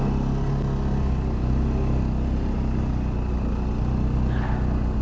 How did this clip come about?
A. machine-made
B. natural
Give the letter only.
B